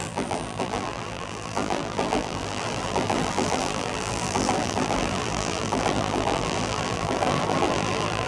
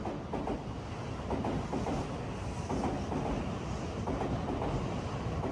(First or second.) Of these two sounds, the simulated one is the first